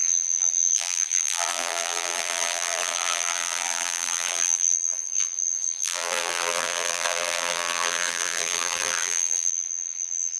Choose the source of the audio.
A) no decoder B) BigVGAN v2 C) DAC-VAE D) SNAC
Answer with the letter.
B